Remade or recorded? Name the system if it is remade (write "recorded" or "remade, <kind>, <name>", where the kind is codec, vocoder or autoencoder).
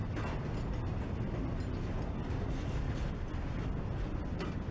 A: recorded